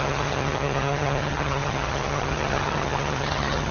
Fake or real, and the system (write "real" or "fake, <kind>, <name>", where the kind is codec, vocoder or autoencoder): fake, vocoder, HiFi-GAN